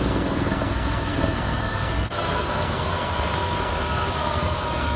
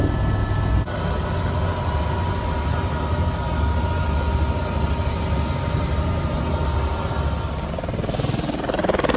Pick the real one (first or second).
second